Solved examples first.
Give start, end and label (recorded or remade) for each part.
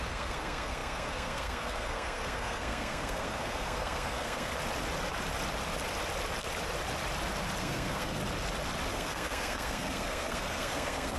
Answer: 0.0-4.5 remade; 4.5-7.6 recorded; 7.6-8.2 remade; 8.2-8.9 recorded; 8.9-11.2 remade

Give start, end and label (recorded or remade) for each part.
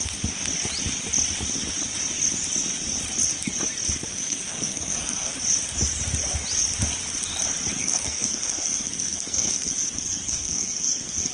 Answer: 0.0-4.1 recorded; 4.1-5.3 remade; 5.3-7.8 recorded; 7.8-11.3 remade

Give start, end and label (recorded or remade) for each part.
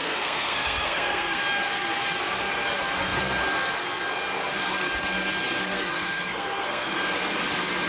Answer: 0.0-1.4 remade; 1.4-5.7 recorded; 5.7-7.1 remade; 7.1-7.9 recorded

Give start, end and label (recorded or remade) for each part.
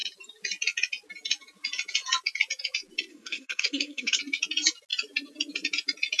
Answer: 0.0-3.1 recorded; 3.1-4.2 remade; 4.2-6.2 recorded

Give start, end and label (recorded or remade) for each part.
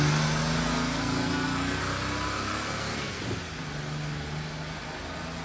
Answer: 0.0-0.6 recorded; 0.6-1.8 remade; 1.8-2.5 recorded; 2.5-3.2 remade; 3.2-5.4 recorded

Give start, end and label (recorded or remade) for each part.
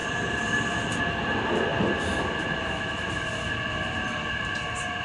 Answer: 0.0-5.0 recorded